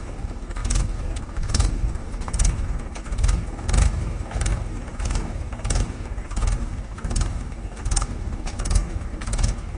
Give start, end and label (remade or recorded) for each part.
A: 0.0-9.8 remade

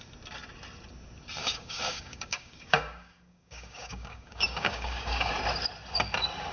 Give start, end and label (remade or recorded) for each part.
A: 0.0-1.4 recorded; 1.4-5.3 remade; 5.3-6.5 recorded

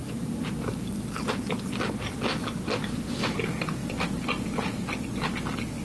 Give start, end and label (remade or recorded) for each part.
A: 0.0-5.8 recorded